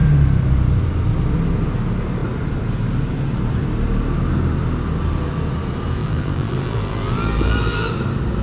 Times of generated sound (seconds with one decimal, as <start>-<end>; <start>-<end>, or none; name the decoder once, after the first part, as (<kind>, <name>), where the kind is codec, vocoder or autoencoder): 6.0-7.9 (vocoder, BigVGAN v2)